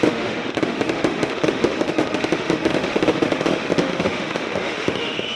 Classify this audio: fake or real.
fake